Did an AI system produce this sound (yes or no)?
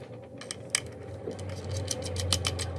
no